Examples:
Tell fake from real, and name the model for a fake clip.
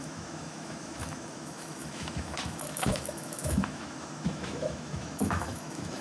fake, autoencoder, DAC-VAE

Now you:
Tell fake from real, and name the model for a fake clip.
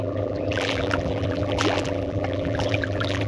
fake, vocoder, BigVGAN v2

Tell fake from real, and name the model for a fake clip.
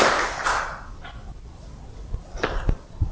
fake, vocoder, BigVGAN v2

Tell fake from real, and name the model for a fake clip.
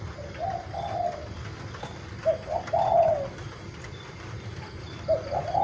real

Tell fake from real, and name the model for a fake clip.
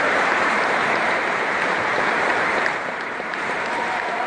fake, vocoder, BigVGAN v2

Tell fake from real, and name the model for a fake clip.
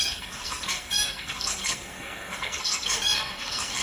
fake, codec, SNAC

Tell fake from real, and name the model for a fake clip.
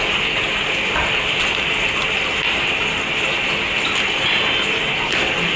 real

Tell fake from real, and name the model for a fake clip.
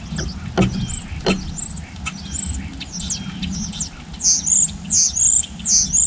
real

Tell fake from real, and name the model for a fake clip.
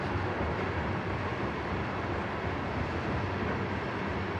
real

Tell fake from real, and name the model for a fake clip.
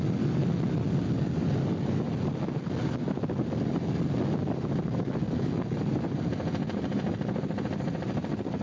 real